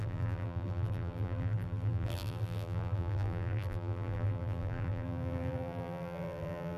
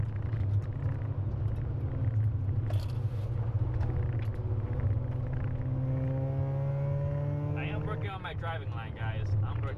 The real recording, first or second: second